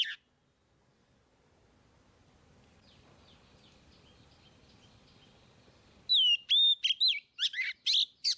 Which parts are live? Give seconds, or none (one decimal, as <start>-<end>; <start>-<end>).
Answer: 0.0-8.4